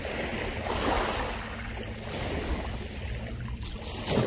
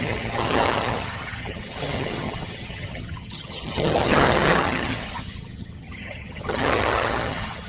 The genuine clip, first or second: first